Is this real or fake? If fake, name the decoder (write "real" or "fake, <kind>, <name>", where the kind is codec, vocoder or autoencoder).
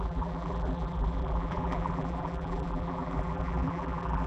fake, vocoder, BigVGAN v2